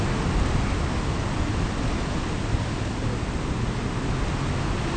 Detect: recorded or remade recorded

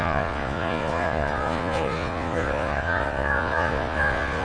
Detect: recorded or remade remade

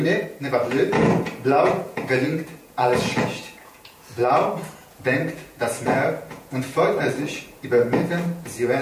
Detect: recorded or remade remade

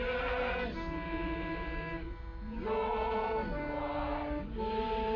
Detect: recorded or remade recorded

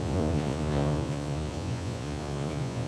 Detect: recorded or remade remade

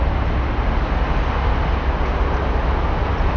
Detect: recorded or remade recorded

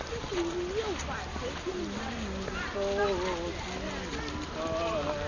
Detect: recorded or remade recorded